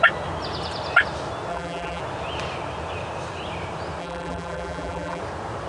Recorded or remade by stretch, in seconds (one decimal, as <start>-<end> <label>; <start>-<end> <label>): 0.0-1.5 recorded; 1.5-2.0 remade; 2.0-4.0 recorded; 4.0-5.2 remade; 5.2-5.7 recorded